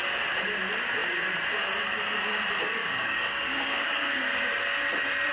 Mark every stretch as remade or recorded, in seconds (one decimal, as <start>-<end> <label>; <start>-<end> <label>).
0.0-2.8 recorded; 2.8-4.2 remade; 4.2-5.3 recorded